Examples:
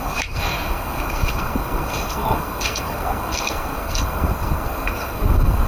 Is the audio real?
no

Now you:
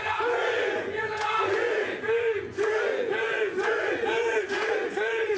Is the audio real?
no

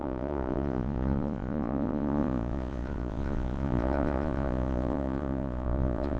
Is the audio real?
no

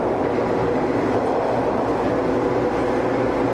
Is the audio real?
yes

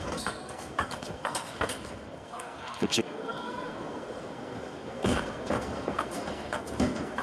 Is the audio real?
no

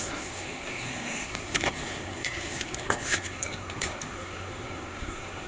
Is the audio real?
no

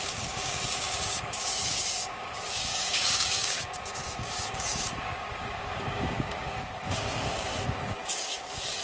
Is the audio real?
no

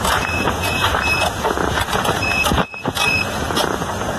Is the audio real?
no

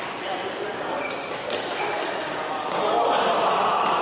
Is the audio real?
yes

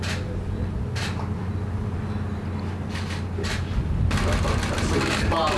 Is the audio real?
yes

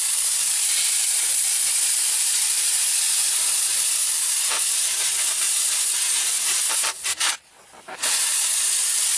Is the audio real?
no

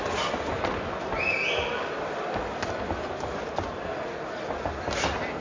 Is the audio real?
yes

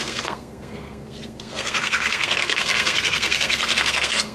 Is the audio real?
no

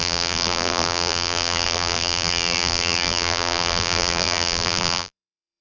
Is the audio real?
no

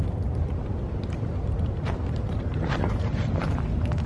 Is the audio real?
no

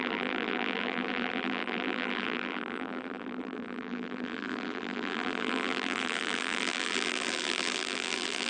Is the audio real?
no